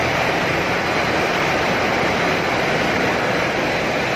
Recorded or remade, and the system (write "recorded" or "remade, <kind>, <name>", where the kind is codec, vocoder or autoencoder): remade, vocoder, BigVGAN v2